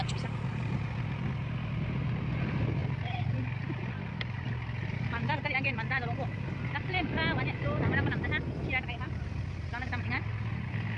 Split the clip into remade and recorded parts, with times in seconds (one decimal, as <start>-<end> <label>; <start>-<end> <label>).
0.0-11.0 recorded